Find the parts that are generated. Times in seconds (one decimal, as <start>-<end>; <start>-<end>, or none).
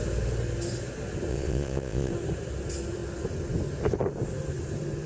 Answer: 1.3-2.1